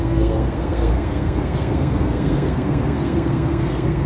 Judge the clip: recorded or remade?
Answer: remade